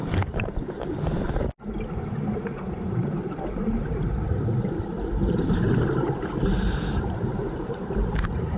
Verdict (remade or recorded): remade